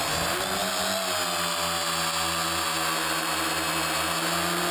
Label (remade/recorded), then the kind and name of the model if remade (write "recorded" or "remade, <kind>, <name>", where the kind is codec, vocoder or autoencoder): recorded